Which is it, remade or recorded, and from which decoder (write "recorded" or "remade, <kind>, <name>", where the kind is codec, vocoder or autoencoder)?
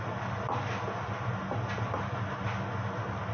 recorded